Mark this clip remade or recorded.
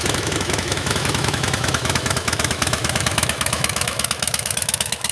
remade